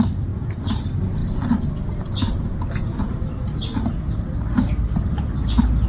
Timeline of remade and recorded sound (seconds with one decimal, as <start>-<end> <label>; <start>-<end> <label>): 0.0-5.9 recorded